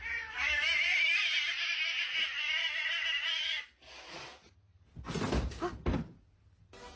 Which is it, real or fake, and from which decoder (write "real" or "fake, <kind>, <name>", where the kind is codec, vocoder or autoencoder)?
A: real